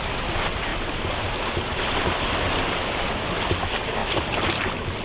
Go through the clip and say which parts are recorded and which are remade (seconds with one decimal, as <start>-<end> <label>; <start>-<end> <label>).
0.0-0.7 recorded; 0.7-3.5 remade; 3.5-4.0 recorded; 4.0-5.0 remade